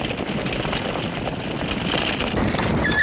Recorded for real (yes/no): yes